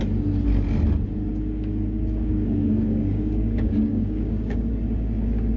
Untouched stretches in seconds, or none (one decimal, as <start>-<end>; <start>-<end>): 0.0-1.3; 4.7-5.6